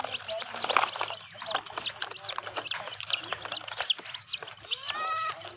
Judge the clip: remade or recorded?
recorded